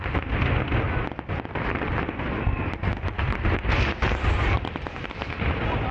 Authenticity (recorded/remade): recorded